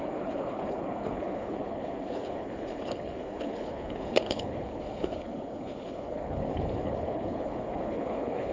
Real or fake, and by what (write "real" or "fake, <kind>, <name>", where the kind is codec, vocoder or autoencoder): fake, codec, HILCodec